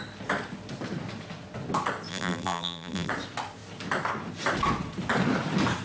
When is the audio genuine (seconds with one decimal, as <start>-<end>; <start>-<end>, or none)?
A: 0.0-2.1; 3.1-5.8